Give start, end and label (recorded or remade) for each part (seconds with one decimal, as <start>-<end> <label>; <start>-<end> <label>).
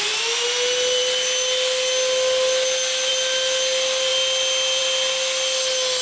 0.0-6.0 recorded